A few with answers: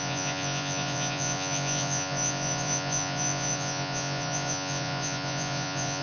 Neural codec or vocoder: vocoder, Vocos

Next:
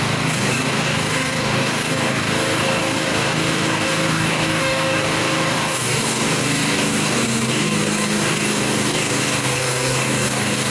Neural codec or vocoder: codec, DAC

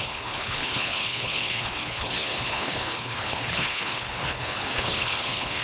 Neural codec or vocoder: codec, HILCodec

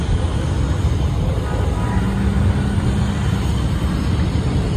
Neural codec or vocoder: none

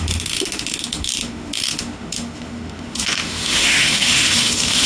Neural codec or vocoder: autoencoder, DAC-VAE